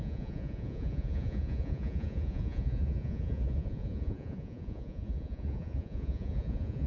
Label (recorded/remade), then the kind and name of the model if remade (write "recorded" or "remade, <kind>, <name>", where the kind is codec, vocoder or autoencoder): remade, vocoder, Vocos